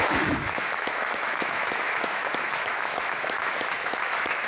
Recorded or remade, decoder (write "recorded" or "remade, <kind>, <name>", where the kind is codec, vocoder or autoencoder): remade, autoencoder, DAC-VAE